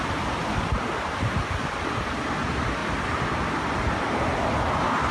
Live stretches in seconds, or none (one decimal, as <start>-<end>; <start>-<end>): none